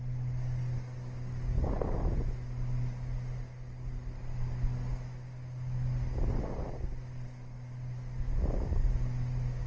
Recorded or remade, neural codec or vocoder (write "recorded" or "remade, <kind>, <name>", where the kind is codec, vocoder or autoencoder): recorded